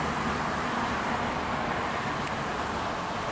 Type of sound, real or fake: real